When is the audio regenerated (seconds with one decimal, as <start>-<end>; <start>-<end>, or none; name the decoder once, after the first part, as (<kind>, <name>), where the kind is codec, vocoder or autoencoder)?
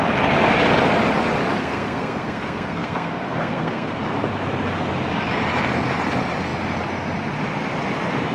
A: 1.6-4.0 (codec, SNAC)